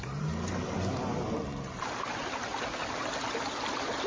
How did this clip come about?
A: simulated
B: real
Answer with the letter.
B